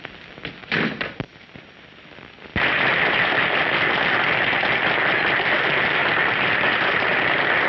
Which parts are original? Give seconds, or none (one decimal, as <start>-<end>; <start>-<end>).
0.0-0.6; 1.7-7.7

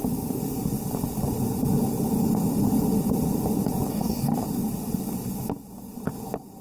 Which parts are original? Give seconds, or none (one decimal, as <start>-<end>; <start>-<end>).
0.0-3.9; 4.3-6.6